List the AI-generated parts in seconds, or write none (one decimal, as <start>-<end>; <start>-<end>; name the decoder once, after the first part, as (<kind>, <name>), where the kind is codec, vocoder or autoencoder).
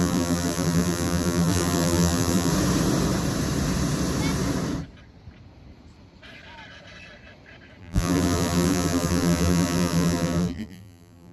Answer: 0.0-2.5 (vocoder, BigVGAN v2); 7.8-11.3